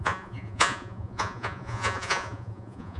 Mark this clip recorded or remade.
remade